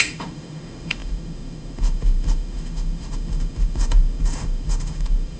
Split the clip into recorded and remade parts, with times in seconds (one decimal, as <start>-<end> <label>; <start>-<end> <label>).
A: 0.0-5.4 remade